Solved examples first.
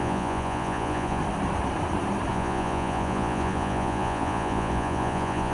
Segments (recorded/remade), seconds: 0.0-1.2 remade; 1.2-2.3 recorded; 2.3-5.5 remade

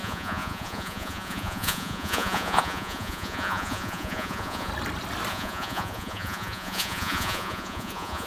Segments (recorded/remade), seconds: 0.0-4.7 remade; 4.7-5.3 recorded; 5.3-8.3 remade

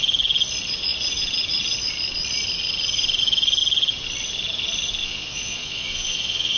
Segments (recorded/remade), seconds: 0.0-5.0 recorded; 5.0-6.6 remade

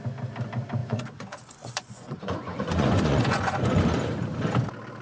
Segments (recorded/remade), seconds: 0.0-0.8 recorded; 0.8-3.8 remade; 3.8-5.0 recorded

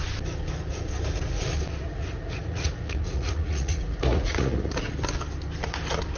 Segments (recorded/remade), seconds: 0.0-1.8 recorded; 1.8-4.9 remade; 4.9-6.2 recorded

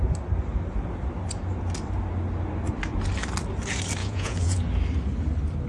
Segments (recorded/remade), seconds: 0.0-4.0 recorded; 4.0-4.6 remade; 4.6-5.7 recorded